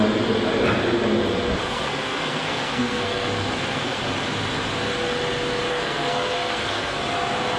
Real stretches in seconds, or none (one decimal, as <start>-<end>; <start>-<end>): 0.0-1.6; 4.0-5.7; 7.0-7.6